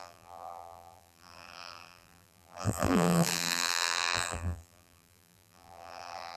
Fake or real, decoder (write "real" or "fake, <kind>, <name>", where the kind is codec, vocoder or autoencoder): fake, vocoder, BigVGAN v2